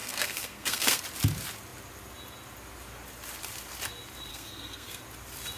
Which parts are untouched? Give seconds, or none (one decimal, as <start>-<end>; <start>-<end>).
1.0-4.3; 5.0-5.6